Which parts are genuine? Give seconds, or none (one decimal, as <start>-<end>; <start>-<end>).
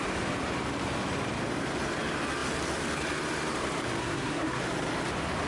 0.0-4.0; 4.6-5.5